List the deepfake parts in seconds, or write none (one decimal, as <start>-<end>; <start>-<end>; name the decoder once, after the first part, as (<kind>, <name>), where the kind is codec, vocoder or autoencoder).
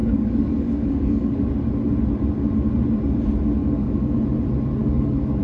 0.0-1.5 (codec, DAC); 3.6-4.2; 4.8-5.4